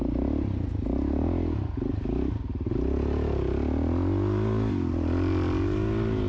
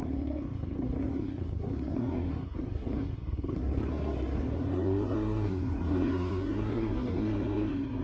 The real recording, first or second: first